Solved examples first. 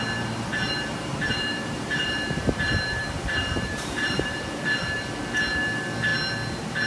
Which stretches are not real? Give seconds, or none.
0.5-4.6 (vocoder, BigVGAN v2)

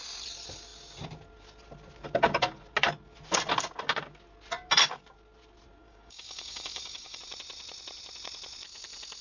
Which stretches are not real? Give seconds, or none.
5.8-7.2 (codec, DAC)

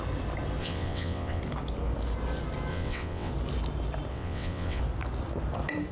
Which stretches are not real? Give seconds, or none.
0.6-1.4 (vocoder, WaveNeXt); 2.7-3.3; 4.1-4.8

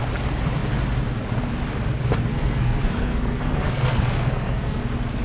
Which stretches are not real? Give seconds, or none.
2.3-4.8 (codec, SNAC)

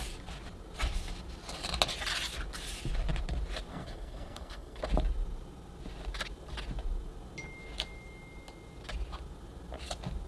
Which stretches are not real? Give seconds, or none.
3.7-4.8 (codec, SNAC)

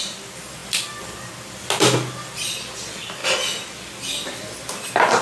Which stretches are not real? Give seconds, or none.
none